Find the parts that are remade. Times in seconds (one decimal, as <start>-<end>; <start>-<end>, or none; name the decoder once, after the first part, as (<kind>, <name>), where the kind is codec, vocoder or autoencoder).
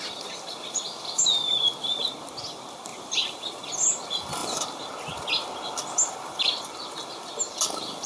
2.9-3.4 (vocoder, BigVGAN v2); 4.4-4.9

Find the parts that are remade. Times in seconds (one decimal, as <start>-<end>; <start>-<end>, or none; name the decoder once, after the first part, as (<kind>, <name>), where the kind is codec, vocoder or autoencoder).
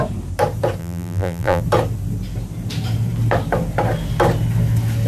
0.8-1.6 (vocoder, BigVGAN v2)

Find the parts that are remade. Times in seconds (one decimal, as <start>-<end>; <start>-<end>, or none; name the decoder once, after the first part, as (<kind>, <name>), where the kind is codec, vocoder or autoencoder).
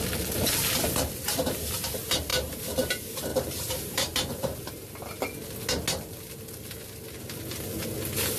2.3-2.9 (vocoder, BigVGAN v2); 3.3-4.7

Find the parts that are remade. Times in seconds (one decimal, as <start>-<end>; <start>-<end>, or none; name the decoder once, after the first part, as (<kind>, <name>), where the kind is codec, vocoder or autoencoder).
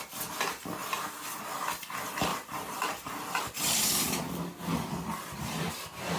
0.8-1.4 (vocoder, BigVGAN v2); 2.3-4.3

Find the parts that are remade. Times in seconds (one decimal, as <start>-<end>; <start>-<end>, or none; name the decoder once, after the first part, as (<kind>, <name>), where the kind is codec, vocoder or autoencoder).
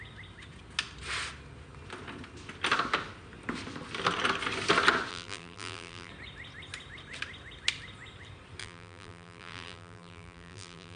5.1-6.1 (vocoder, BigVGAN v2); 8.6-11.0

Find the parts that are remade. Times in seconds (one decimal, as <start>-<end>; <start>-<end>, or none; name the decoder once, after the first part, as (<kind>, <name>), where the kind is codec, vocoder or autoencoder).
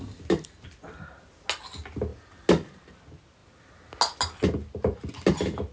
none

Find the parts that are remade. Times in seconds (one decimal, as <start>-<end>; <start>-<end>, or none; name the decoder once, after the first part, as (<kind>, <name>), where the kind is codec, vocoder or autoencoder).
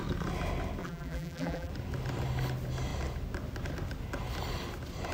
0.8-1.7 (vocoder, BigVGAN v2)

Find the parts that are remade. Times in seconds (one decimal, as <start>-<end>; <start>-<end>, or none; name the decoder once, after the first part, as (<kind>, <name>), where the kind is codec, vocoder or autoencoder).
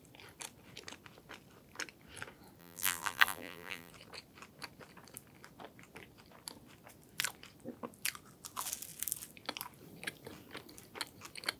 2.6-3.9 (vocoder, BigVGAN v2)